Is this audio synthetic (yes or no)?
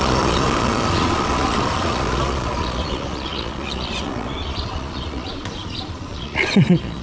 yes